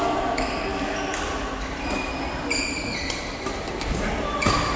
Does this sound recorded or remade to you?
recorded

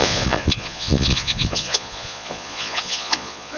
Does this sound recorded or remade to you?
remade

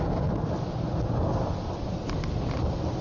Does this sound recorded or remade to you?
recorded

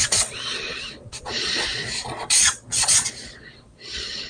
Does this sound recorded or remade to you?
remade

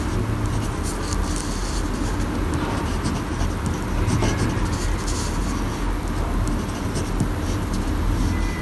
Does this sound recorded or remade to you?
recorded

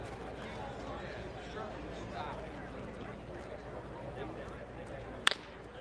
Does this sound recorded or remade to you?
recorded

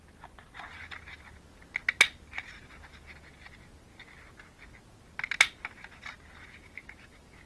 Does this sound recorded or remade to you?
recorded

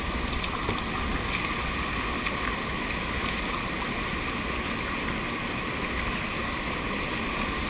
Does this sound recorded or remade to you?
recorded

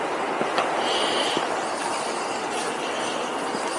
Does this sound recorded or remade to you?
recorded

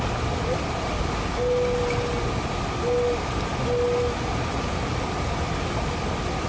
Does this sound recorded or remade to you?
recorded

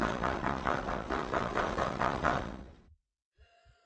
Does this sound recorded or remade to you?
remade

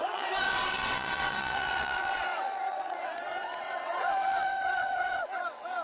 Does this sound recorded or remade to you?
remade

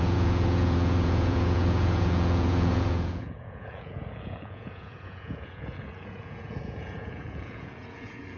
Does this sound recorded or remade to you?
remade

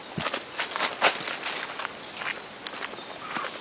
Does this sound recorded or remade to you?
recorded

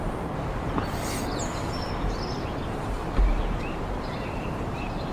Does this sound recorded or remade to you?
remade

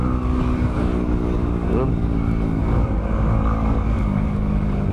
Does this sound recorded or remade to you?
remade